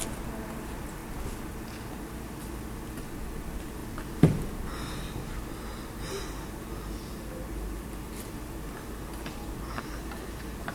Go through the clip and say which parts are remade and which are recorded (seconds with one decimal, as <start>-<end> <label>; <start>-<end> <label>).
0.0-10.7 recorded